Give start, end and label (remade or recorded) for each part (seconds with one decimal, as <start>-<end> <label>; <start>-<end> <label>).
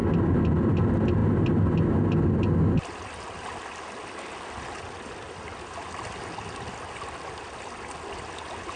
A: 0.0-8.8 recorded